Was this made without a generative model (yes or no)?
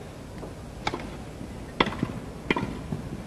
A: yes